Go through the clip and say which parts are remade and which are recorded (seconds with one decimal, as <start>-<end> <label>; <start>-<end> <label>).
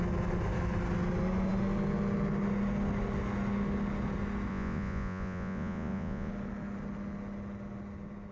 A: 0.0-4.5 recorded; 4.5-6.3 remade; 6.3-8.3 recorded